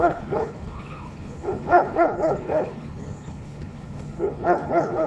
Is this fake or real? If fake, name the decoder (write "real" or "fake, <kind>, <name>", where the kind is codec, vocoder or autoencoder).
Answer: fake, codec, HILCodec